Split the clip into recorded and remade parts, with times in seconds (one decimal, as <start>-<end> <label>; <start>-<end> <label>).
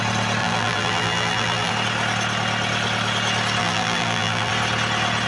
0.0-0.4 recorded; 0.4-1.7 remade; 1.7-3.6 recorded; 3.6-4.5 remade; 4.5-5.3 recorded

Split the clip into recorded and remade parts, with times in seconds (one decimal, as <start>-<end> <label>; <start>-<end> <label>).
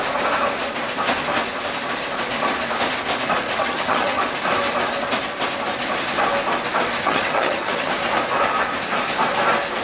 0.0-3.6 recorded; 3.6-4.2 remade; 4.2-7.0 recorded; 7.0-7.9 remade; 7.9-9.8 recorded